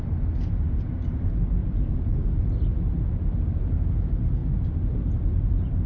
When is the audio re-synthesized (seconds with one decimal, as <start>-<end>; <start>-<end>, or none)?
1.6-2.2; 4.4-5.9